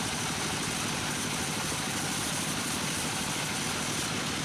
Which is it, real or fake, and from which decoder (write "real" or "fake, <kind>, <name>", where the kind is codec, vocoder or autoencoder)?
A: real